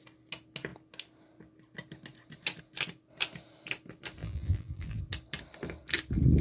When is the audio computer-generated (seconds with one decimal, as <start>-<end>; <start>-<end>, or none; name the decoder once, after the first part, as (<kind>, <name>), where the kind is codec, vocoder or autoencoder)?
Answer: 4.2-5.0 (vocoder, BigVGAN v2)